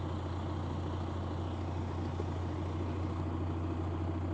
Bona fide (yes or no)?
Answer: yes